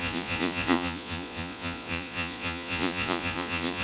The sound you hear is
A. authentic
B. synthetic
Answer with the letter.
B